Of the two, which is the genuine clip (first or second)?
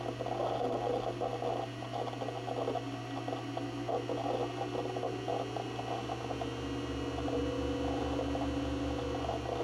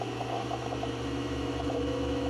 first